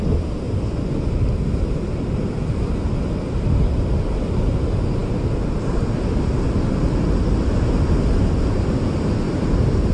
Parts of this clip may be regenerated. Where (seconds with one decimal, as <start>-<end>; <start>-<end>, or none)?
none

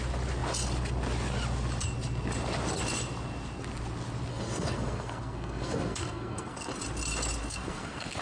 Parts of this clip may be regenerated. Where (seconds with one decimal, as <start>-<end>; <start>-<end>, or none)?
4.3-6.7; 7.4-8.2

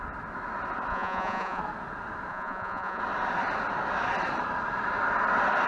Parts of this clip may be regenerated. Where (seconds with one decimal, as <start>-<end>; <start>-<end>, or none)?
0.9-1.6; 2.3-3.0

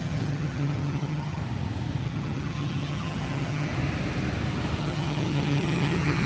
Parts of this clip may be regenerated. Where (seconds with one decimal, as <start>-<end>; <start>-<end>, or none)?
0.0-1.4; 2.0-3.7; 4.8-6.3

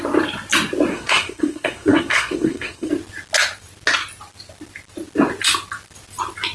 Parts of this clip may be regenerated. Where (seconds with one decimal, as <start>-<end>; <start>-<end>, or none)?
0.9-2.9

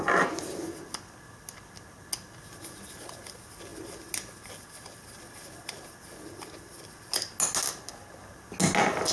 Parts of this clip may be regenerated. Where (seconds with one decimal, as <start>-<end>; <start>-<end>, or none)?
none

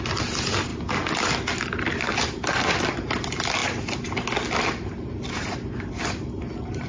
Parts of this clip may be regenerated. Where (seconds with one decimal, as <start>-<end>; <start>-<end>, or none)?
none